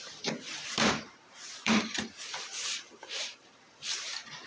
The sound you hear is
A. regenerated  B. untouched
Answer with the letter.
A